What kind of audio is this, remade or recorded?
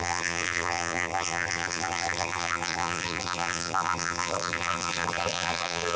remade